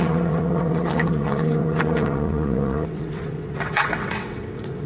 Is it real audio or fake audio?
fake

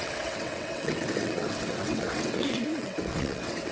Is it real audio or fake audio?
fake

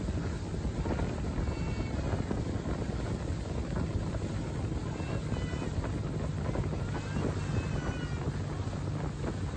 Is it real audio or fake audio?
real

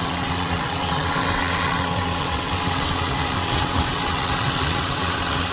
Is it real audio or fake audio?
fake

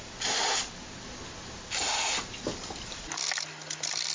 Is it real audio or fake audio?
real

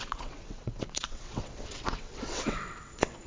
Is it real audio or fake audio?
fake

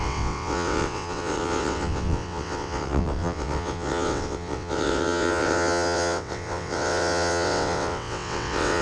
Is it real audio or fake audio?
fake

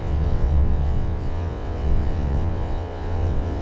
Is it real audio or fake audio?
fake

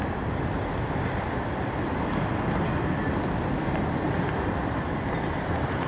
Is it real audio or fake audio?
real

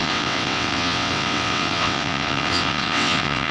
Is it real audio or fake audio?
fake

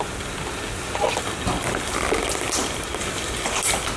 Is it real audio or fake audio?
real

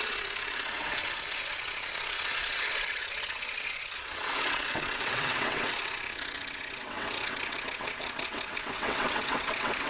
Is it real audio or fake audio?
fake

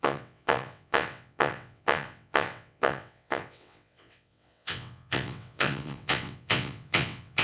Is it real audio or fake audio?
fake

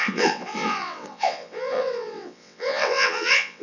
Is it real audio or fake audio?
fake